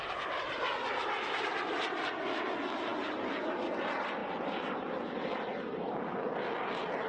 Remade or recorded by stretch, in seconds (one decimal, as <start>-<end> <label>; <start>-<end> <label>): 0.0-7.1 recorded